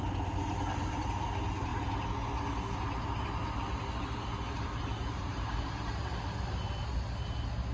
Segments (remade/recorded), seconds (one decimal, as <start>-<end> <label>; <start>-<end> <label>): 0.0-5.0 recorded; 5.0-5.9 remade; 5.9-7.7 recorded